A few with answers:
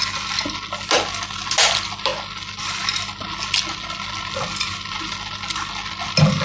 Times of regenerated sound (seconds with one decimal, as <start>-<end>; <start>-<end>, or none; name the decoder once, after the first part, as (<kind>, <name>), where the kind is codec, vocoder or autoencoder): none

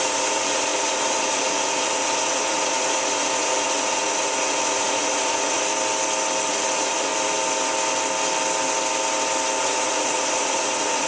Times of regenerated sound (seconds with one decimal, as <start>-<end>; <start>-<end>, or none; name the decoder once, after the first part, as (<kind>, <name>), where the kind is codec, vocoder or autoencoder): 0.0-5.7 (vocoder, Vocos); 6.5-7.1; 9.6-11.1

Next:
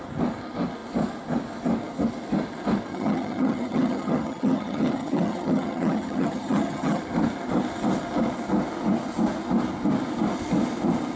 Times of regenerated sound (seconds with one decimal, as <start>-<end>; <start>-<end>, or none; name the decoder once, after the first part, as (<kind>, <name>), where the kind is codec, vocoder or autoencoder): 2.9-7.0 (vocoder, HiFi-GAN)

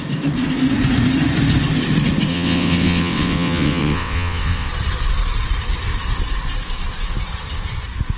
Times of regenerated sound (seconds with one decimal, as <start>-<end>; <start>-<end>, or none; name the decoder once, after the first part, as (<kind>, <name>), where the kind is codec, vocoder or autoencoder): 2.3-4.7 (vocoder, WaveNeXt)

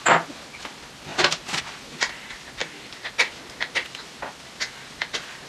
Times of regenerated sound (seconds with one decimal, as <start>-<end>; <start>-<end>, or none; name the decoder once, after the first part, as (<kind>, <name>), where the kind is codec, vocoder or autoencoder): none

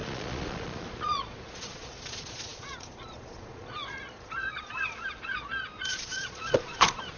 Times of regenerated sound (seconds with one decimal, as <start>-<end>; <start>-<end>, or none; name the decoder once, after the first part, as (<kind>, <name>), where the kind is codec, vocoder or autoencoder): 0.0-7.2 (vocoder, Vocos)

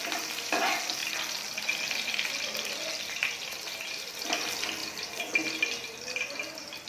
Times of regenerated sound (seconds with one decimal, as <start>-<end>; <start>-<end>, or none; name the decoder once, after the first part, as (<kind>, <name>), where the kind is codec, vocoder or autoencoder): none

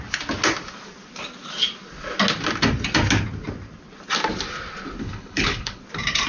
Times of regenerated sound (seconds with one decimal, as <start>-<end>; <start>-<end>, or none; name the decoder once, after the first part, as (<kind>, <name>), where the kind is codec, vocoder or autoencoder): 5.0-5.8 (codec, HILCodec)